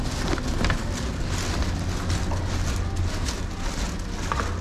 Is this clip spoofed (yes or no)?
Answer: no